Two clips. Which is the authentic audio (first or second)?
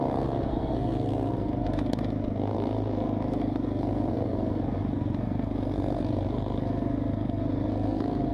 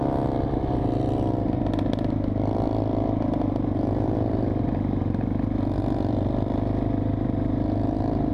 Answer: second